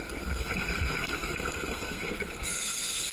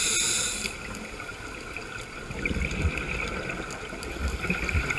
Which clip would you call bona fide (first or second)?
second